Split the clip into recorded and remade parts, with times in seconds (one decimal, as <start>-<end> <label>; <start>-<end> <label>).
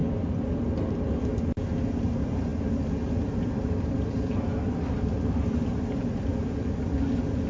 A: 0.0-2.5 recorded; 2.5-7.0 remade; 7.0-7.5 recorded